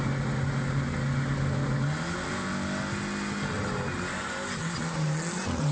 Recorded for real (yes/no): yes